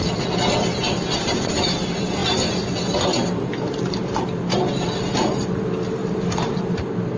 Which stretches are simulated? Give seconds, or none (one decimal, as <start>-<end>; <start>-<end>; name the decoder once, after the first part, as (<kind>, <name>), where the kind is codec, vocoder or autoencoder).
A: 6.0-6.6 (vocoder, BigVGAN v2)